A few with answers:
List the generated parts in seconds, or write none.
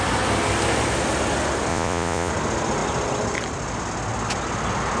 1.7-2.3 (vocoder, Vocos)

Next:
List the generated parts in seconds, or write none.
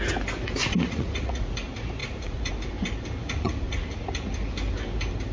0.6-1.5 (vocoder, Vocos); 2.0-2.5; 3.2-3.8